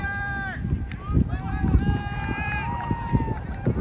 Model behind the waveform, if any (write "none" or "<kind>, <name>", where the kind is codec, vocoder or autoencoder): none